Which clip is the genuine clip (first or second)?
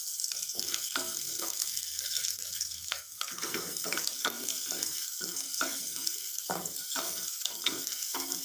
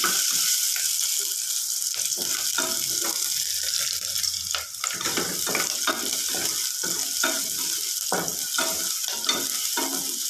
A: second